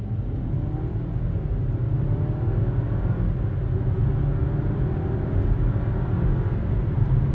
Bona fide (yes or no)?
yes